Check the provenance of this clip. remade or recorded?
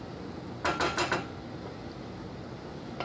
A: recorded